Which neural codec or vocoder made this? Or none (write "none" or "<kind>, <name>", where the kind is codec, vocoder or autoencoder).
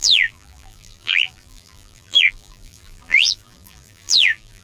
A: vocoder, BigVGAN v2